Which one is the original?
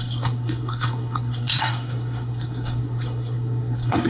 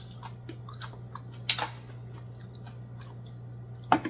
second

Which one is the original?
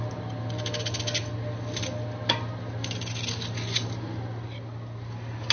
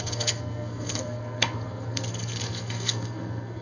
first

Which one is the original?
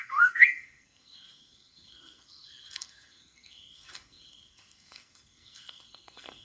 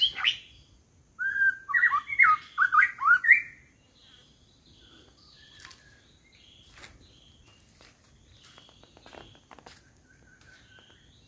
second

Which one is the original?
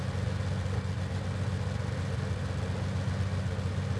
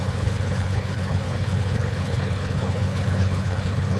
first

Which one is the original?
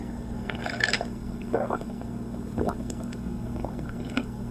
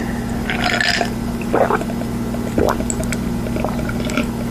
second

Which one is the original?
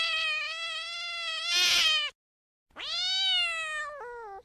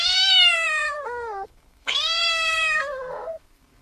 first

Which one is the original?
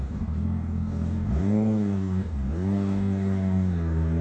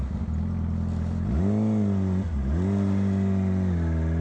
second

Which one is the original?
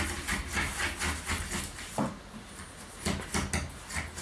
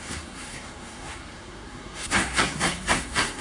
first